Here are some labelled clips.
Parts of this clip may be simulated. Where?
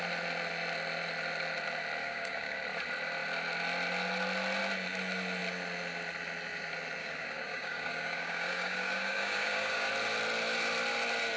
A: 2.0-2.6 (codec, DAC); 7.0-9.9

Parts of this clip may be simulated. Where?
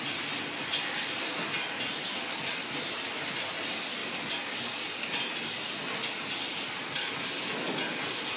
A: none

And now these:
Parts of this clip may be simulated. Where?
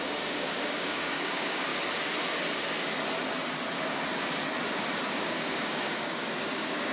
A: 0.0-1.7 (codec, DAC); 5.1-6.9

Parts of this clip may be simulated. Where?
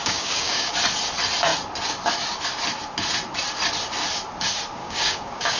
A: 0.0-0.7 (codec, DAC); 4.8-5.6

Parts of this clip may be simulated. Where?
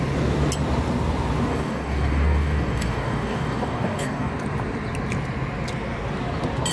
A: 1.5-4.3 (codec, DAC)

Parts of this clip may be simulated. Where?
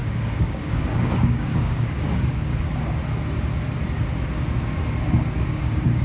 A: 0.0-2.5 (codec, DAC); 5.4-6.0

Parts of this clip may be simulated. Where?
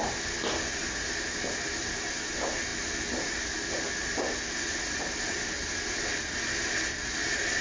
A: none